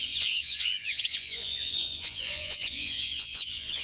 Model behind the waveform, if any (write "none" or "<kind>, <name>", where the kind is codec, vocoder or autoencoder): vocoder, Vocos